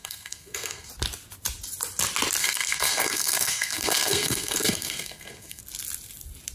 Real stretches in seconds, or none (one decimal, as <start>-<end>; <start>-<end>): 0.9-2.4; 5.6-6.5